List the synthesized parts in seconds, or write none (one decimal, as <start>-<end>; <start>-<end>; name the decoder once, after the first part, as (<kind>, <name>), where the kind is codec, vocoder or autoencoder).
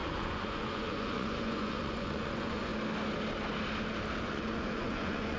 0.0-2.7 (vocoder, Vocos); 4.2-5.4